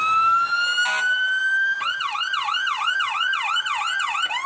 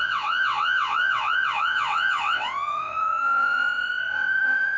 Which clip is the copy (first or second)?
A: second